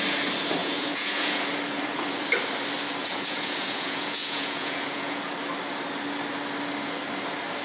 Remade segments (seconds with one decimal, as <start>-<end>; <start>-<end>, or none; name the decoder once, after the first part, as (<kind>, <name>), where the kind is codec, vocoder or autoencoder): 0.6-1.4 (vocoder, Vocos); 3.0-5.2